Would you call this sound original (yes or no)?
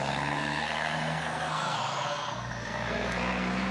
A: no